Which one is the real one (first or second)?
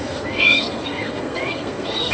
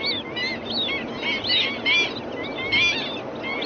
second